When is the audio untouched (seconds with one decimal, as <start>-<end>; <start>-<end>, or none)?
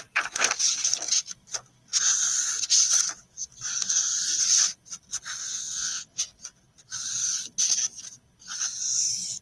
0.0-5.4; 6.2-9.4